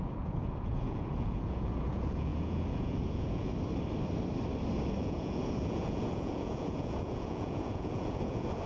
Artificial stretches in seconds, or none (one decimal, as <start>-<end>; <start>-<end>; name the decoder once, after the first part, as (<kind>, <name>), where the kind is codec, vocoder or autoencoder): 0.0-3.5 (vocoder, Vocos); 5.0-8.7